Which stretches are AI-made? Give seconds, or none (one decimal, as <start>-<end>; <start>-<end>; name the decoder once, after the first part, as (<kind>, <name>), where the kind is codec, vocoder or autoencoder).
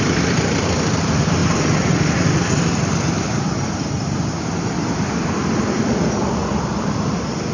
0.0-1.4 (vocoder, BigVGAN v2); 5.5-6.5; 7.1-7.5